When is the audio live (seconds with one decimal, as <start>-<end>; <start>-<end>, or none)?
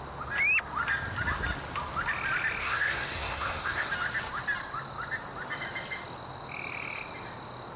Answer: 0.0-2.6; 3.9-7.8